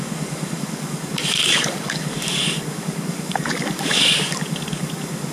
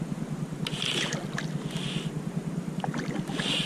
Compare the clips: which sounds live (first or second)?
second